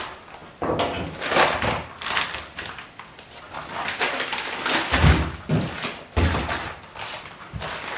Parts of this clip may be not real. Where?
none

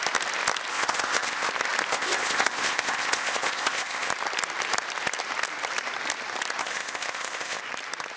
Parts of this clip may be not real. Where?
0.7-1.5; 1.9-4.1; 6.6-7.6

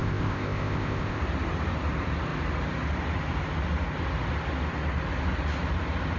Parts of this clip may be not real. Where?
0.0-1.2

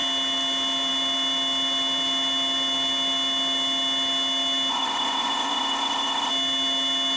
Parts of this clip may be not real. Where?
4.7-6.3

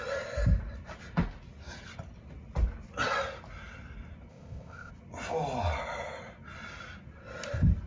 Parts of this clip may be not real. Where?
4.3-4.9

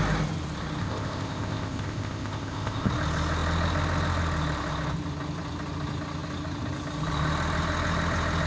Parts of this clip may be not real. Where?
0.8-2.9

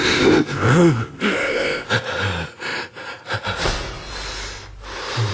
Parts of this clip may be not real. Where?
0.0-1.9

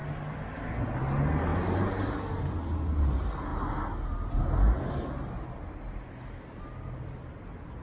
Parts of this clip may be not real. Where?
none